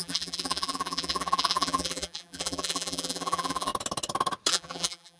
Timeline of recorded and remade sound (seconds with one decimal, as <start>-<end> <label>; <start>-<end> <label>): 0.0-3.7 remade; 3.7-4.5 recorded; 4.5-5.2 remade